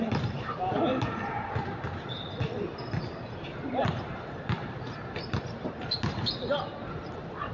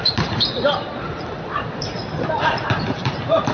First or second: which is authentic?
first